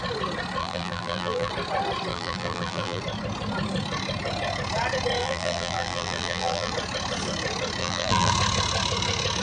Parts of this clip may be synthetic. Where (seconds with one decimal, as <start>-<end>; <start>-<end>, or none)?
0.6-1.5; 2.1-3.0; 5.2-6.7; 7.8-8.3